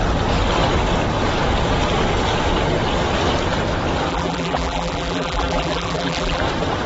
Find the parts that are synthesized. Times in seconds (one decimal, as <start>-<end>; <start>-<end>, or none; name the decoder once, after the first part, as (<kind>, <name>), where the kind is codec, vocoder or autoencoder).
4.1-6.4 (vocoder, BigVGAN v2)